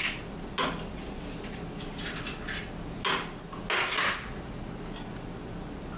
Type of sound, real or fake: real